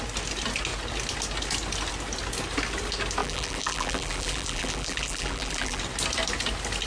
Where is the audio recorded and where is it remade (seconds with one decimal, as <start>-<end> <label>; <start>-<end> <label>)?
0.0-3.2 recorded; 3.2-5.8 remade; 5.8-6.9 recorded